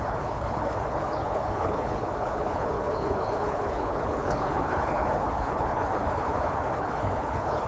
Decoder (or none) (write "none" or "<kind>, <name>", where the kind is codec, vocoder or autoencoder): codec, HILCodec